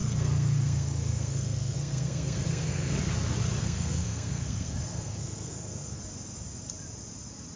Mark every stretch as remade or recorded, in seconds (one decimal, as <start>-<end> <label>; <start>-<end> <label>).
0.0-3.0 remade; 3.0-3.6 recorded; 3.6-6.0 remade; 6.0-7.6 recorded